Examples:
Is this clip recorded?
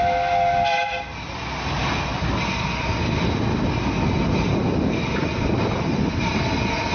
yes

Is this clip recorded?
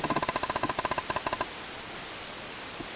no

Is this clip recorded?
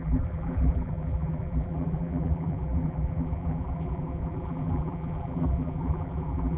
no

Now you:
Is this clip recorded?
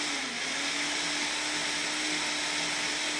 yes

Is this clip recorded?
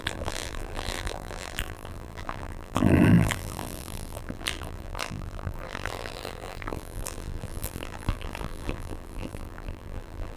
no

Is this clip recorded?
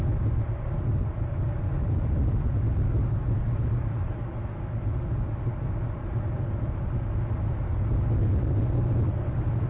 yes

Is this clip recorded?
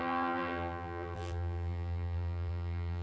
no